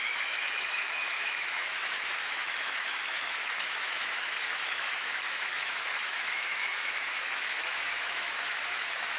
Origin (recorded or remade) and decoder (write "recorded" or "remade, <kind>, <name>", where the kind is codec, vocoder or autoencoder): remade, autoencoder, DAC-VAE